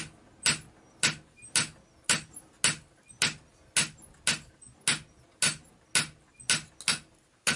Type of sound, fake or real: real